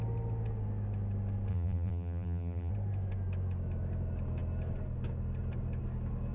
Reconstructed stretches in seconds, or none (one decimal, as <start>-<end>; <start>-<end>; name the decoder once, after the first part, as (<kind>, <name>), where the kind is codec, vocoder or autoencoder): 1.5-2.7 (vocoder, BigVGAN v2)